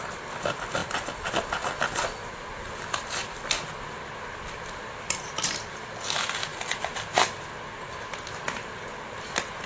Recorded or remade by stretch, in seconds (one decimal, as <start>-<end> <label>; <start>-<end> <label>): 0.0-0.8 recorded; 0.8-1.3 remade; 1.3-9.7 recorded